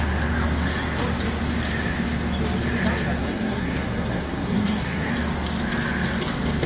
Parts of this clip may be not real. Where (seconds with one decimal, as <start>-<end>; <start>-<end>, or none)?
3.2-5.1